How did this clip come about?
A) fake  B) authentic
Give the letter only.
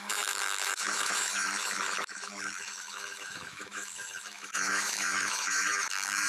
A